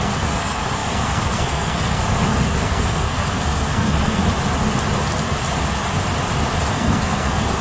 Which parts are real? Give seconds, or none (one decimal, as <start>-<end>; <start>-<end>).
4.2-6.7